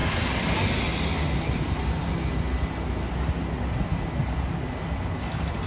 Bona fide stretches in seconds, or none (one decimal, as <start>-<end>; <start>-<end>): 0.0-5.7